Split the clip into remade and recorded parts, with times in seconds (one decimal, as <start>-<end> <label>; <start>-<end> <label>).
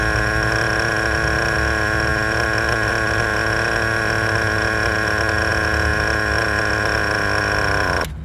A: 0.0-8.2 recorded